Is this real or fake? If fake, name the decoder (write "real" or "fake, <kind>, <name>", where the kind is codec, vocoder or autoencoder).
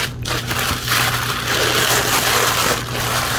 real